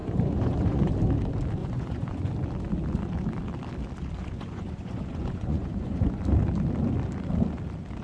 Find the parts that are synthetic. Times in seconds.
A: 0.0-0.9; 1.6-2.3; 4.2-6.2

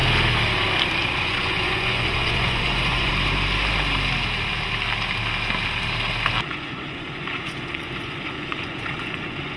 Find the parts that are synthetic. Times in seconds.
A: 1.2-3.1; 6.5-9.6